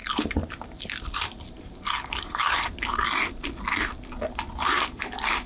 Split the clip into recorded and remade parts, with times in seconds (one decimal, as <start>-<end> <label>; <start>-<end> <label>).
0.0-5.5 recorded